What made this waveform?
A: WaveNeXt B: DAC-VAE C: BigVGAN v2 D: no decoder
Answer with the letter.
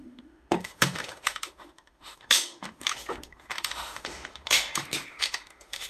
B